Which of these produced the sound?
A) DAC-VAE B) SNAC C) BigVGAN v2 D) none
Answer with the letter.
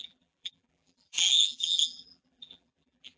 C